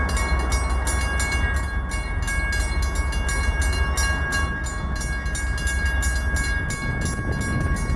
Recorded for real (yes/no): yes